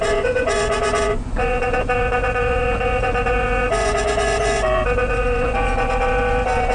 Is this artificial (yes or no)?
yes